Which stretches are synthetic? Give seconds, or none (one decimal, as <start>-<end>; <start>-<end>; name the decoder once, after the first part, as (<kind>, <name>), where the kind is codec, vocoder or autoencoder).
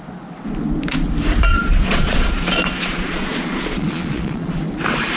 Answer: 1.5-4.6 (vocoder, Vocos)